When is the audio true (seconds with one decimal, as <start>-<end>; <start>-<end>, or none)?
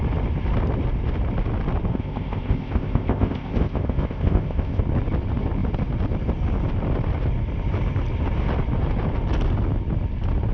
0.0-1.9; 4.8-10.5